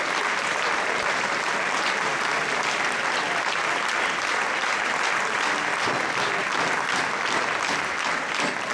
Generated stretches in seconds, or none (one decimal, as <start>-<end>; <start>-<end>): none